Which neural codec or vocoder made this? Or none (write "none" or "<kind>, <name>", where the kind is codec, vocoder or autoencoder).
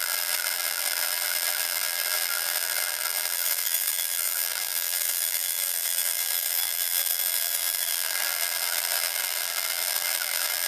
vocoder, BigVGAN v2